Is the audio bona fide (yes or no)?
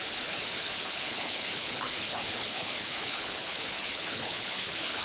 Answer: no